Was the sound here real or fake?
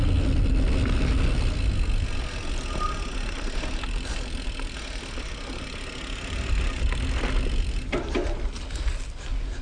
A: real